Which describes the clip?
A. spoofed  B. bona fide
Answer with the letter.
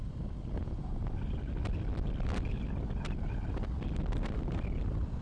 B